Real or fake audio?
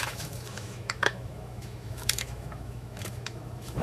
fake